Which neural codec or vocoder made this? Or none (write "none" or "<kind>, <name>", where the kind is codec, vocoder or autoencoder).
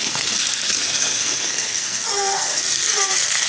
codec, SNAC